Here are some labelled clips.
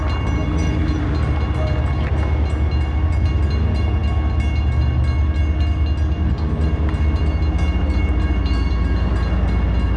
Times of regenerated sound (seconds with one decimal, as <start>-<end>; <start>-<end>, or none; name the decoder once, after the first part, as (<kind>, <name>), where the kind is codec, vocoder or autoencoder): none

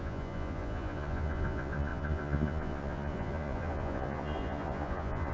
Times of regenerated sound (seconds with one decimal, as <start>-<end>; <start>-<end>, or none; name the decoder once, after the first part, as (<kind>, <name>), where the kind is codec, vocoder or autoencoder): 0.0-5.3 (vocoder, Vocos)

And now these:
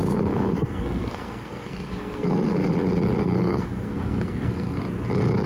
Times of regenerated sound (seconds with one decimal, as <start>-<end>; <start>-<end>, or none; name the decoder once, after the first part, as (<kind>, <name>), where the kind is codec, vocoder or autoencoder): 0.0-2.7 (codec, SNAC); 3.2-4.8

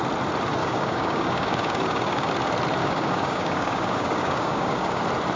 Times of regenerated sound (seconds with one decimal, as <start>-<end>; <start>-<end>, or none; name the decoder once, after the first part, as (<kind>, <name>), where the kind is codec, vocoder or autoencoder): 0.6-2.3 (codec, DAC); 2.8-5.0